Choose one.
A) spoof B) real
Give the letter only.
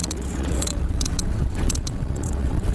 A